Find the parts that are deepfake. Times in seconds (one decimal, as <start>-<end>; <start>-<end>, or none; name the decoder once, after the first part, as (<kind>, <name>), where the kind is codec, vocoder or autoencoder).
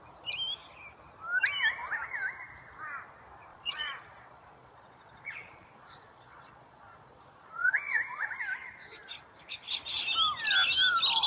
3.5-8.4 (vocoder, Vocos)